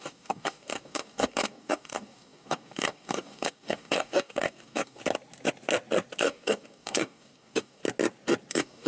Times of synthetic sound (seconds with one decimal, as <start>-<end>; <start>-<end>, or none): 0.0-5.0; 6.2-7.8; 8.5-8.9